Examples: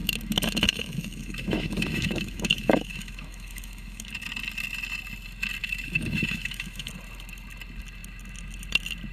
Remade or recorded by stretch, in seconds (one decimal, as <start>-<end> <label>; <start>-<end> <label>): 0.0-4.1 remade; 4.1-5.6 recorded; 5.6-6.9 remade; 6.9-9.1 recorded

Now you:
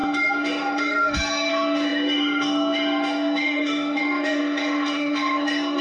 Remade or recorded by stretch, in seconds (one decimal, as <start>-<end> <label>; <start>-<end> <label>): 0.0-5.8 remade

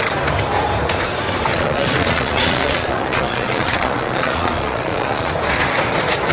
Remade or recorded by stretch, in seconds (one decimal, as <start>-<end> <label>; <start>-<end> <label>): 0.0-1.5 recorded; 1.5-5.3 remade; 5.3-6.3 recorded